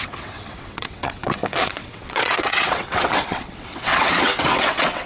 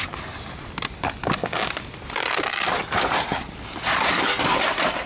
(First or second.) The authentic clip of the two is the second